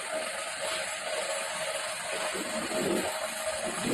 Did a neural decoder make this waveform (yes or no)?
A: no